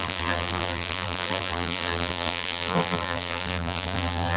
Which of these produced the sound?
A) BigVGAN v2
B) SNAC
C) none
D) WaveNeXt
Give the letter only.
A